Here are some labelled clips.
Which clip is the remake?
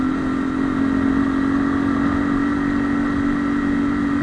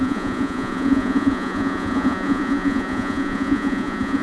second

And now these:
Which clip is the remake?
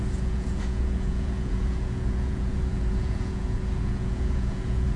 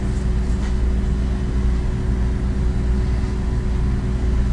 first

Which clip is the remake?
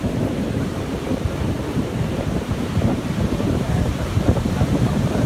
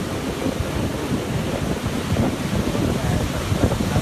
first